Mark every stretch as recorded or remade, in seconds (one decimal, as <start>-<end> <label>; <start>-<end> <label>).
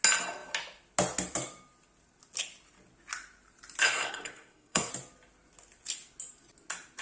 0.0-3.8 recorded; 3.8-4.9 remade; 4.9-7.0 recorded